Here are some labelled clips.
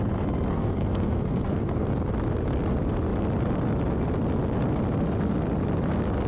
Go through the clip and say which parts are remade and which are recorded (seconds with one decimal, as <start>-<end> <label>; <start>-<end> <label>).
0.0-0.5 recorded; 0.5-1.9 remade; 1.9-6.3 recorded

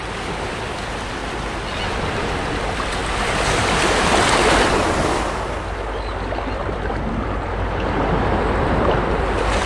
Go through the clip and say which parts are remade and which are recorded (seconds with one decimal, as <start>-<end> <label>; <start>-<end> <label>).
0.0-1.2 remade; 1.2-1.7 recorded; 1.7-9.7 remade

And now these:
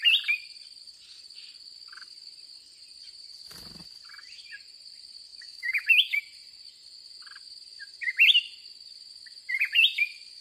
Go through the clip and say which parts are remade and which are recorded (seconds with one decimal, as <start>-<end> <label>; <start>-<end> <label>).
0.0-5.3 recorded; 5.3-6.2 remade; 6.2-10.4 recorded